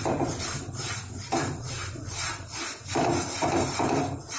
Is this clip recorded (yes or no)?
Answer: no